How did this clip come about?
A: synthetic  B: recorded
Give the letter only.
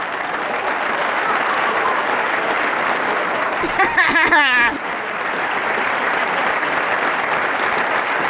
B